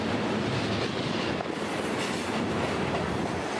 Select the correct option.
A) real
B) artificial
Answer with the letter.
A